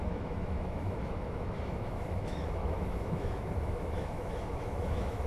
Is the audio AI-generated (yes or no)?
yes